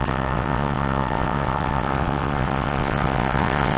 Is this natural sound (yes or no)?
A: no